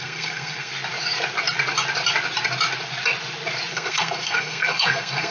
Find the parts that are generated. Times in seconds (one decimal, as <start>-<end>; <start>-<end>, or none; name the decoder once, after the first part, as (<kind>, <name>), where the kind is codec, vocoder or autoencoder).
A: 0.0-0.7 (codec, SNAC); 3.7-5.3